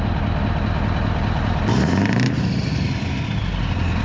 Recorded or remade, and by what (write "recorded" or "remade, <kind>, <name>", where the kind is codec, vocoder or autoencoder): recorded